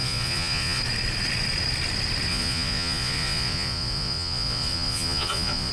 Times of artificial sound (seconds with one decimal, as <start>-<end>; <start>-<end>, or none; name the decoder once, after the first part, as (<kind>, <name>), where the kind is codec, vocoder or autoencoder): 0.0-0.8 (vocoder, Vocos); 2.3-5.7